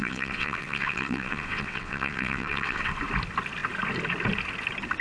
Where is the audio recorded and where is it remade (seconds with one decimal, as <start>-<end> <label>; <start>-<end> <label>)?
0.0-2.9 remade; 2.9-5.0 recorded